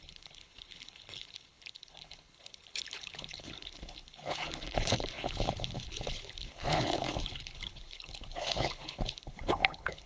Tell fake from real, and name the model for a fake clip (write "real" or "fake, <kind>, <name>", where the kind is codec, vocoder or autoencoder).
fake, codec, HILCodec